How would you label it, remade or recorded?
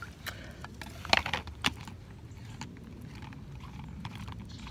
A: recorded